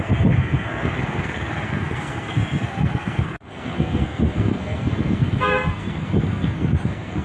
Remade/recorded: remade